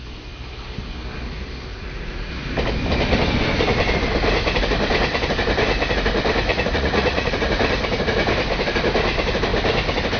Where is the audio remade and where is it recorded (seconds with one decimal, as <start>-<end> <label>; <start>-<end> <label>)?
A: 0.0-1.7 recorded; 1.7-2.3 remade; 2.3-6.5 recorded; 6.5-7.5 remade; 7.5-10.2 recorded